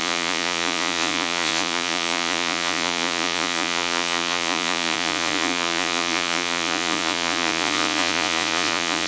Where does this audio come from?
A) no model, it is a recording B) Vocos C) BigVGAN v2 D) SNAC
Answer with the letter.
B